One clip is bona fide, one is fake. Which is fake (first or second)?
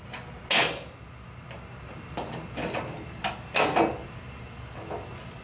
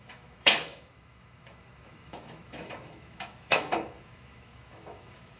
second